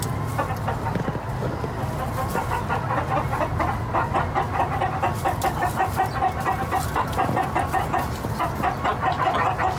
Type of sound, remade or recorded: recorded